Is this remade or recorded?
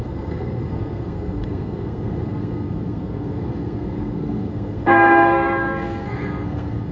remade